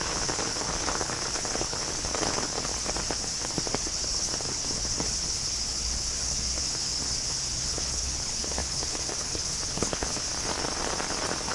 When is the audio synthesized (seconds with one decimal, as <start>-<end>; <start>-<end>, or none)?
0.0-2.7; 3.2-10.3